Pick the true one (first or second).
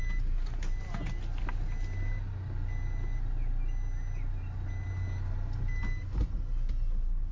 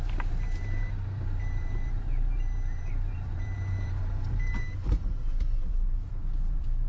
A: first